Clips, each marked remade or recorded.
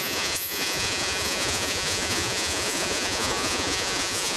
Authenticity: remade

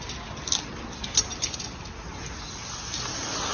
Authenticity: recorded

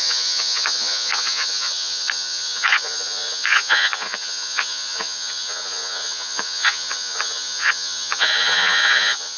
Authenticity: remade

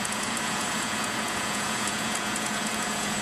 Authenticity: remade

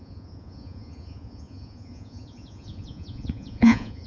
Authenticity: remade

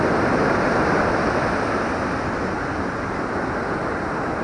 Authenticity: recorded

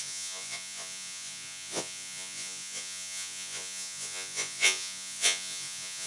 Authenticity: remade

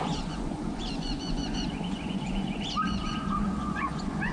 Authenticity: remade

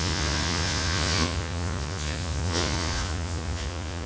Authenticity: remade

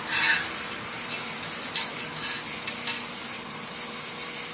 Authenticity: recorded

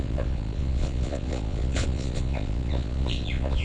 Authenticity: remade